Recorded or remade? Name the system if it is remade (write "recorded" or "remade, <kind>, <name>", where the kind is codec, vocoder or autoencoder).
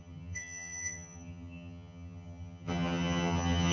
remade, vocoder, HiFi-GAN